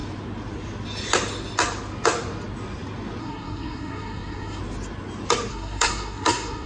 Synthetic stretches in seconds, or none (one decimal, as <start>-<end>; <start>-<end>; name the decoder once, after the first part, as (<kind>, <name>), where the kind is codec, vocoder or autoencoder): 3.2-4.6 (codec, SNAC); 5.5-6.7